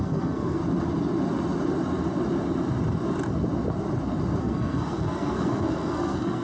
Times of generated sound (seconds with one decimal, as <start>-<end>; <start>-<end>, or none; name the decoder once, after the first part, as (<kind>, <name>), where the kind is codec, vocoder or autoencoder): 0.0-0.6 (codec, SNAC); 4.4-6.4